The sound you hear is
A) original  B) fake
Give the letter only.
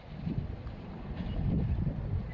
A